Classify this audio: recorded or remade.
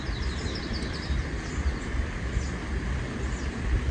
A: recorded